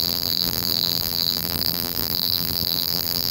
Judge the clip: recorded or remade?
remade